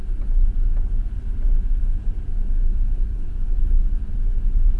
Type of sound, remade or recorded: recorded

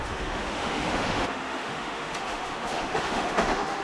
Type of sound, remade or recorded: remade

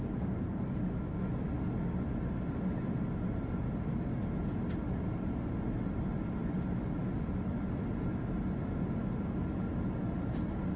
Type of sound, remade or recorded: recorded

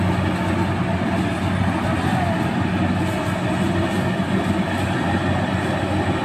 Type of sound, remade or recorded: recorded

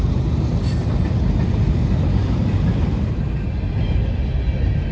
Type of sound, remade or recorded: recorded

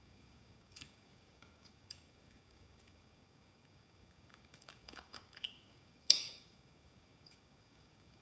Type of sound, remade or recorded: remade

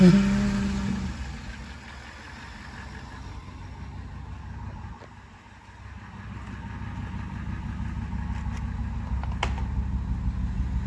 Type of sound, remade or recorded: recorded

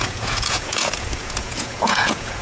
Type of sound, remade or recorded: remade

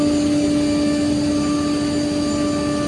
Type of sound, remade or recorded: recorded